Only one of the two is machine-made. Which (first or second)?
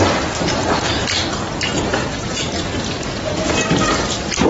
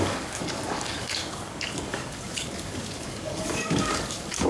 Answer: second